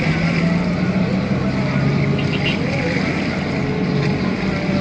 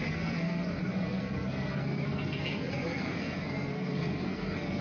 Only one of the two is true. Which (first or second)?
first